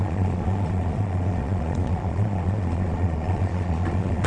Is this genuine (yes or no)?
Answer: no